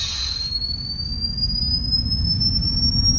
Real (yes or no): yes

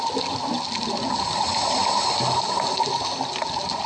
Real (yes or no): yes